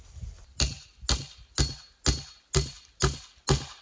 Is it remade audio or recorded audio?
recorded